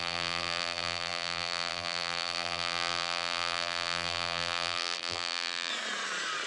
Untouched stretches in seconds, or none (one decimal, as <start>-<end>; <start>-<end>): 5.7-6.5